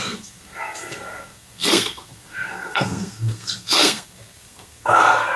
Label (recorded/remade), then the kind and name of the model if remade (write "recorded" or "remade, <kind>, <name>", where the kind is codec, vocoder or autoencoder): remade, codec, SNAC